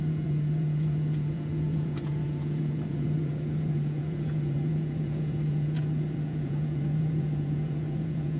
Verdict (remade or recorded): remade